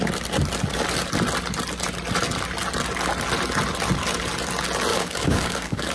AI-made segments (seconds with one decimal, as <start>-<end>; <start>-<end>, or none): 4.9-5.9